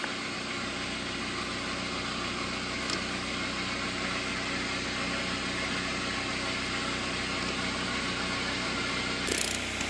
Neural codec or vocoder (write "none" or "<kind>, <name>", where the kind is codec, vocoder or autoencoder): none